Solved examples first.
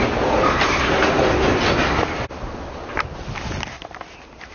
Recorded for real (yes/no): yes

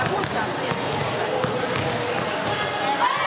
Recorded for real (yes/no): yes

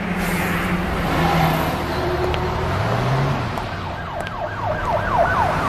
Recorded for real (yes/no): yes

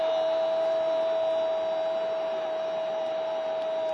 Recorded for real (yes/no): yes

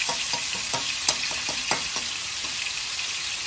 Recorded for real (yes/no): no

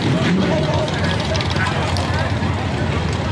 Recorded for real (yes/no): no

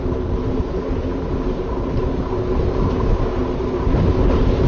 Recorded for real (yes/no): yes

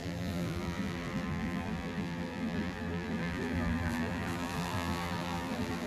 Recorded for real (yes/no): no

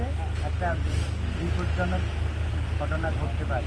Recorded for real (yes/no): yes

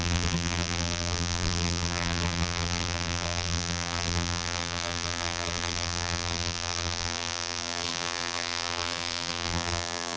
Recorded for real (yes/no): no